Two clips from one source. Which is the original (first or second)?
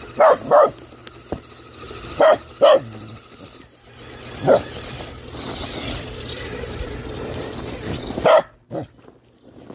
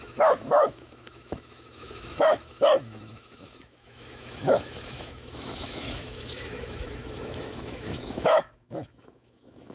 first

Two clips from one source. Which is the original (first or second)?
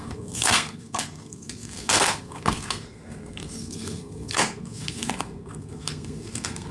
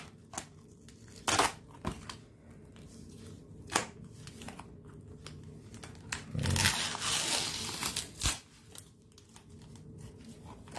second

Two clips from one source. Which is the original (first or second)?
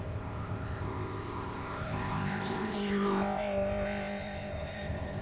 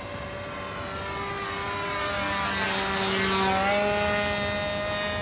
second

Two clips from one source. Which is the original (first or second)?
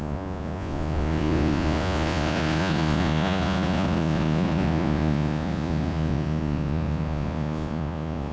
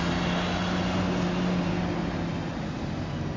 second